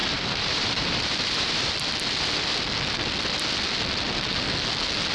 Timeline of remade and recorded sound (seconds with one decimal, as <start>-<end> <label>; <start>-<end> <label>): 0.0-1.7 remade; 1.7-5.1 recorded